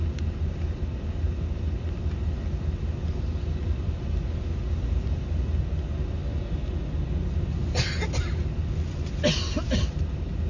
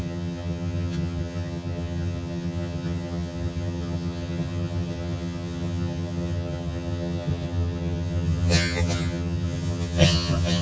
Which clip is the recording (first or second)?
first